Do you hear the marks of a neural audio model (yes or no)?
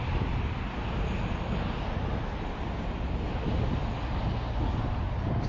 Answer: no